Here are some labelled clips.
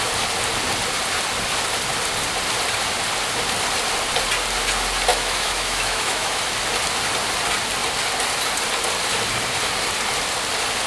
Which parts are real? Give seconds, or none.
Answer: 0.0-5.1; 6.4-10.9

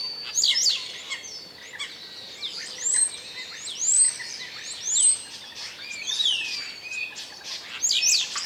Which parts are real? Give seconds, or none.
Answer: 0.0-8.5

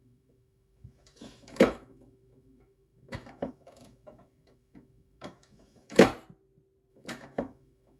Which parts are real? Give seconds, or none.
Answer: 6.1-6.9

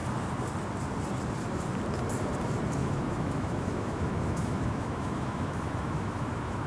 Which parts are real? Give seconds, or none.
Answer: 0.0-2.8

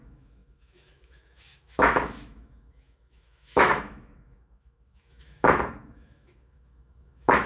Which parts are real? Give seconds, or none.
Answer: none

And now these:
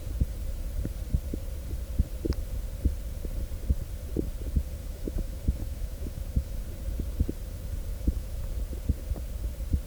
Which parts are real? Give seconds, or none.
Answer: 0.0-4.8; 6.6-7.9; 8.4-9.9